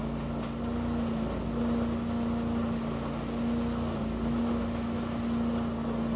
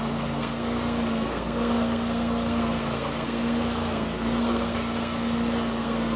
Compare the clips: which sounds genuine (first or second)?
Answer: first